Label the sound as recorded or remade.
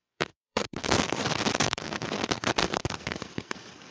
remade